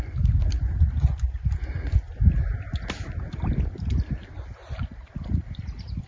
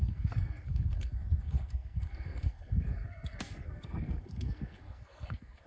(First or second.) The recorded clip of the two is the first